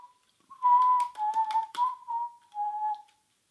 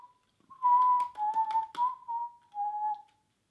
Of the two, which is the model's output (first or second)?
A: first